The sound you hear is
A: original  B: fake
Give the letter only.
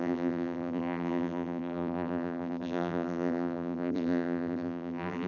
B